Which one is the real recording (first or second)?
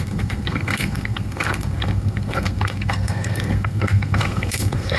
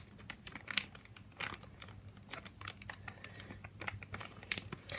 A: second